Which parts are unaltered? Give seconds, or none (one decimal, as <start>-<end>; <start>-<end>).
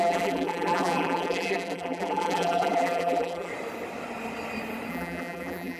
3.5-4.9